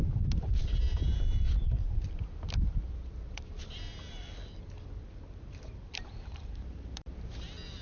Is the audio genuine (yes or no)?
no